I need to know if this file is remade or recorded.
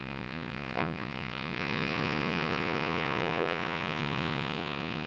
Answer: remade